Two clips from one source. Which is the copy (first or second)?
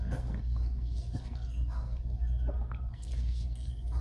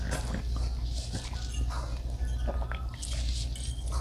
first